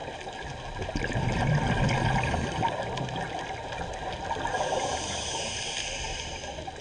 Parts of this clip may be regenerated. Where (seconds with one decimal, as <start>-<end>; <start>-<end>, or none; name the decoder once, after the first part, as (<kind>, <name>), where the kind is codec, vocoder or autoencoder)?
none